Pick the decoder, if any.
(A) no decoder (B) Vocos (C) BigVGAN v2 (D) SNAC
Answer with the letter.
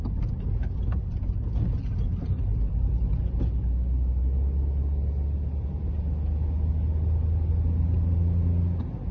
A